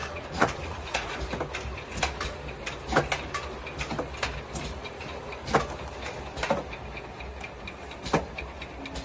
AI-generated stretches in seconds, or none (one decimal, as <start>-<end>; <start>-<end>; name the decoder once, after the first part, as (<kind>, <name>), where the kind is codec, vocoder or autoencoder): 0.0-1.1 (vocoder, Vocos); 4.8-5.5